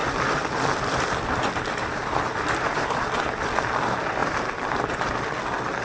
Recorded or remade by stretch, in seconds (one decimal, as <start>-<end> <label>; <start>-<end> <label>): 0.0-3.2 remade; 3.2-4.2 recorded; 4.2-4.8 remade; 4.8-5.8 recorded